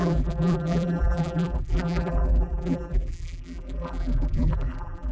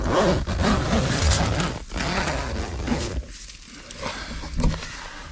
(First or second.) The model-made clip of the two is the first